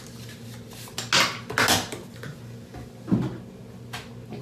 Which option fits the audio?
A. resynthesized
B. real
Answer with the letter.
B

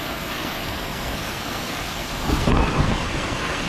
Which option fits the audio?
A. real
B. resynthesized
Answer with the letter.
B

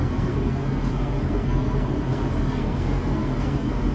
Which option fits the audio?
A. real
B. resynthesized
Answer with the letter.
B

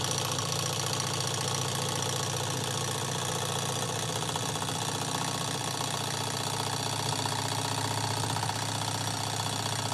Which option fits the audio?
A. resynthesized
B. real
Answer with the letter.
B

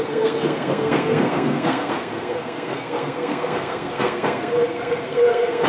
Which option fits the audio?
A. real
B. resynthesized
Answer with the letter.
B